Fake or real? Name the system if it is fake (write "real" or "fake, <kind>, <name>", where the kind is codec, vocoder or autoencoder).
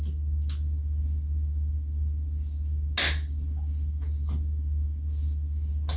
real